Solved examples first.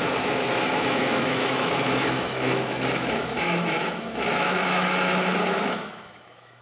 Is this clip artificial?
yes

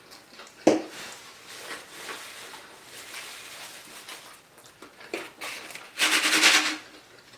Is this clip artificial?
no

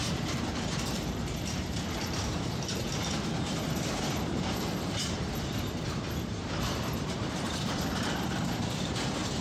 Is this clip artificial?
yes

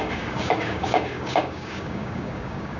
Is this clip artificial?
yes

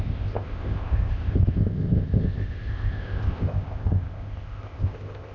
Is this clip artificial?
yes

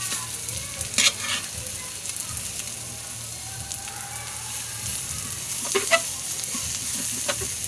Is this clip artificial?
no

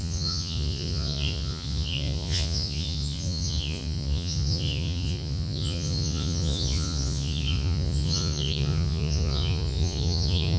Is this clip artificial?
yes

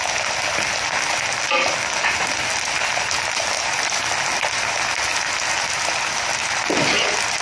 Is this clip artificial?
no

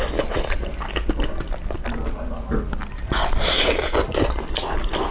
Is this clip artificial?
yes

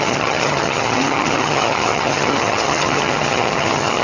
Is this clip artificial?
yes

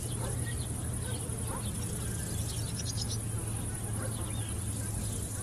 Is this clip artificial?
no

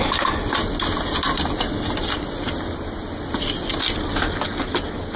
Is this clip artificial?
no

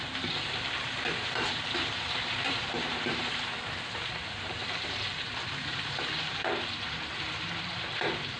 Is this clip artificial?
yes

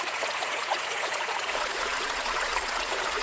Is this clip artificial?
yes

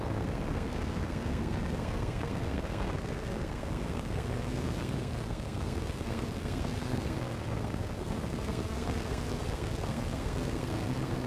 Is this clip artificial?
yes